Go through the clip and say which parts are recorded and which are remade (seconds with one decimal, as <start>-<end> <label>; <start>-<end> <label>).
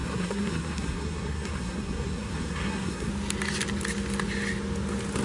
0.0-3.1 remade; 3.1-5.2 recorded